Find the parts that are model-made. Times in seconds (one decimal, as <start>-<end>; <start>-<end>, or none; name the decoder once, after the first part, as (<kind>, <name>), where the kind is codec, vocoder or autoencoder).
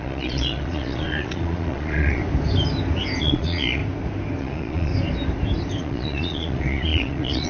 0.0-2.2 (vocoder, Vocos); 3.2-3.8; 4.4-4.9; 5.8-7.5